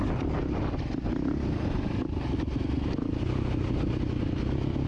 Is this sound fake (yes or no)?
no